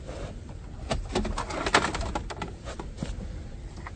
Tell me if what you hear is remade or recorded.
recorded